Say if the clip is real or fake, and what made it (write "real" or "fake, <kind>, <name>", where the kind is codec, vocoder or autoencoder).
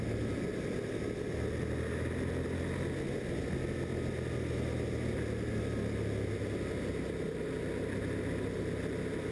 real